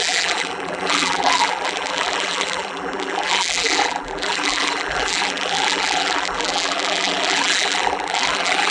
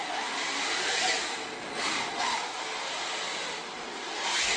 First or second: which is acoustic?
second